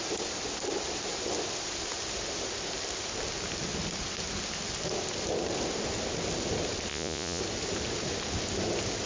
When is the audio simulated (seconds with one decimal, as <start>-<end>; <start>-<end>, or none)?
6.9-7.4